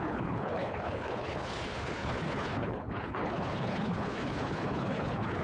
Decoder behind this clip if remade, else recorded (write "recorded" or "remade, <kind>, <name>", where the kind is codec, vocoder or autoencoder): remade, codec, HILCodec